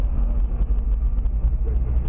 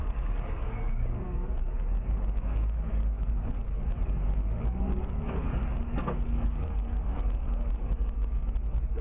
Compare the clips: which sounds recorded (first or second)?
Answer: first